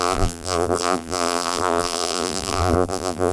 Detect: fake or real fake